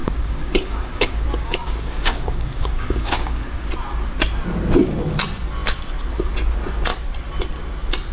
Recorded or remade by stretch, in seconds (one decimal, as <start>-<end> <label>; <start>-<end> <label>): 0.0-3.7 remade; 3.7-8.1 recorded